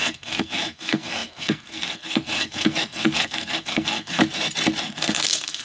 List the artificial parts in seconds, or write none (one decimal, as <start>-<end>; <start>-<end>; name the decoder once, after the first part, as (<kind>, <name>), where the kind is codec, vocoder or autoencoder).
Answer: 0.0-4.2 (codec, SNAC); 4.8-5.6